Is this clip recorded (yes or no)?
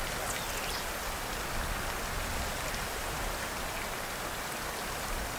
yes